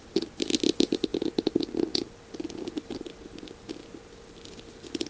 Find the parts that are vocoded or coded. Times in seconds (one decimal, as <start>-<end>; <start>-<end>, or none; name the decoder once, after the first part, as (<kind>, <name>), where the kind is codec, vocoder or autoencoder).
0.0-3.8 (vocoder, BigVGAN v2)